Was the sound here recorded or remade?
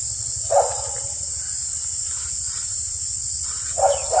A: recorded